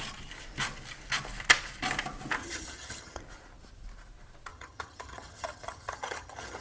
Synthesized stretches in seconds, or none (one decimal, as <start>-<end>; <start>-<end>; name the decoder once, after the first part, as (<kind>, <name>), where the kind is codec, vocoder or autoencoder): 2.4-3.2 (vocoder, HiFi-GAN); 4.5-6.6